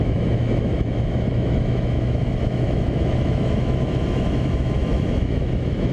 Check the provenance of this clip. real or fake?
fake